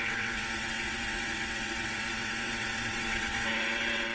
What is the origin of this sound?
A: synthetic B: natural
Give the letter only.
A